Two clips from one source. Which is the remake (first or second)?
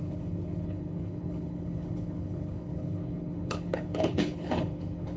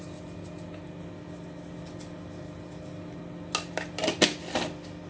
first